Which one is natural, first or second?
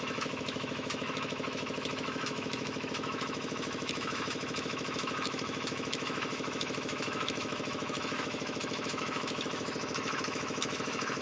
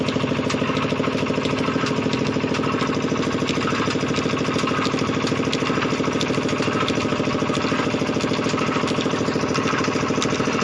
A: second